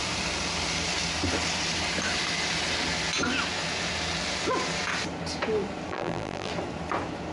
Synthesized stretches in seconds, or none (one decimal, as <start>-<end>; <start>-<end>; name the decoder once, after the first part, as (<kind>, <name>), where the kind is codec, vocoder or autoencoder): 5.9-6.5 (vocoder, BigVGAN v2)